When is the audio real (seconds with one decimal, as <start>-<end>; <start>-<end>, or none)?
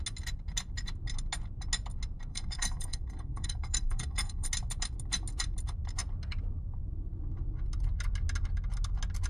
0.0-2.3; 4.5-9.3